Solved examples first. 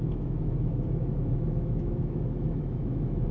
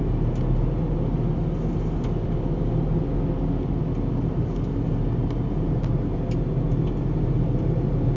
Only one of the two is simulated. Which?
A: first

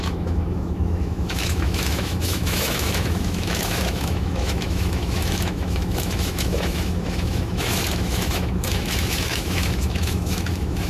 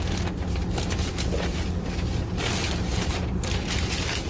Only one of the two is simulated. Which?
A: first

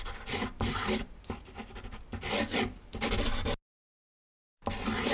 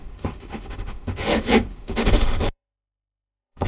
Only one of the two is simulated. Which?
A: second